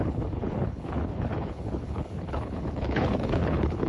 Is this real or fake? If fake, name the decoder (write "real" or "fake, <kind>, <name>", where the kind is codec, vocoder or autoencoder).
fake, codec, HILCodec